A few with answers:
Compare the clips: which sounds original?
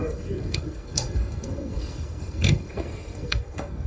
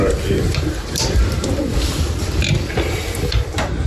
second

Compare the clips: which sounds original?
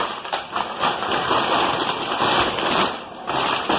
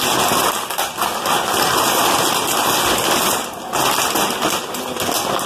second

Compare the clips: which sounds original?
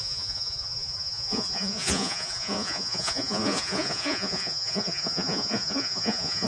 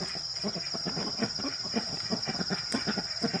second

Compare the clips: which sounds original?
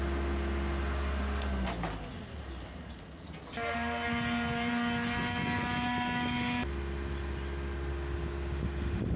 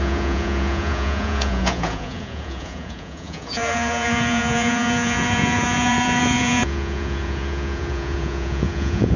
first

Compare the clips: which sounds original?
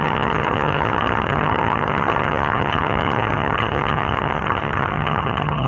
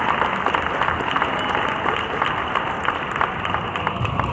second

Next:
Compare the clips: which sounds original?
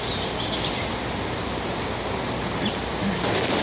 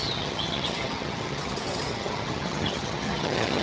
first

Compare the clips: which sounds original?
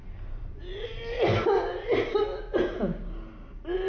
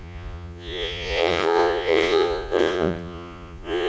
first